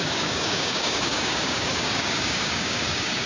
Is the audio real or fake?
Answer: fake